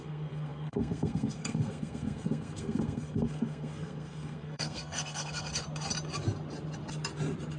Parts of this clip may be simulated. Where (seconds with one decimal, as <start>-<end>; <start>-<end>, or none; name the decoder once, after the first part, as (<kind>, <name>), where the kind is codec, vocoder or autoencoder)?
0.0-5.5 (codec, SNAC)